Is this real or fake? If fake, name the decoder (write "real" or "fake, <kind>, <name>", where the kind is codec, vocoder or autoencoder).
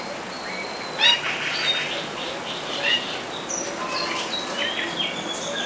real